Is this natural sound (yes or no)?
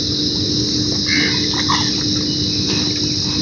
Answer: yes